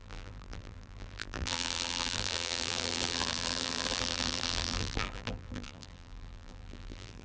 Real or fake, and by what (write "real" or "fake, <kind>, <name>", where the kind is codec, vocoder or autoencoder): fake, vocoder, BigVGAN v2